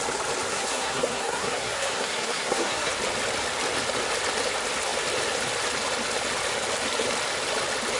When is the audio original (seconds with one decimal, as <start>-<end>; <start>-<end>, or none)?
0.0-0.5; 2.9-8.0